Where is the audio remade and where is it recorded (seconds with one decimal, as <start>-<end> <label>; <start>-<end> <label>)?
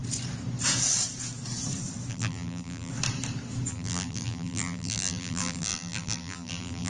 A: 0.0-2.1 recorded; 2.1-2.9 remade; 2.9-3.7 recorded; 3.7-6.9 remade